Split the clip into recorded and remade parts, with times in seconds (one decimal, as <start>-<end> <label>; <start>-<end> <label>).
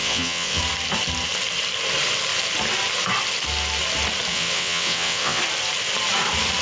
0.0-0.6 remade; 0.6-4.3 recorded; 4.3-5.4 remade; 5.4-6.6 recorded